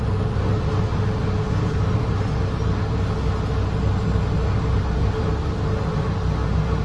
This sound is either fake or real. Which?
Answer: real